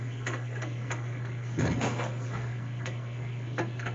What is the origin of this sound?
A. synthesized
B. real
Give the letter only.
A